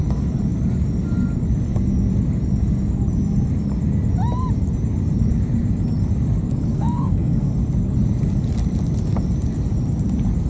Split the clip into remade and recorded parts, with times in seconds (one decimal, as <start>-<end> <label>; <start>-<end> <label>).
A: 0.0-6.7 recorded; 6.7-7.5 remade; 7.5-10.5 recorded